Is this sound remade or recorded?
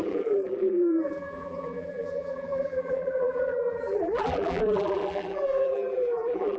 remade